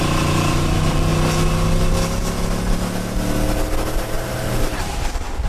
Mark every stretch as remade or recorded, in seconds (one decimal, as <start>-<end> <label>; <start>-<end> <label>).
0.0-1.1 remade; 1.1-4.0 recorded; 4.0-5.5 remade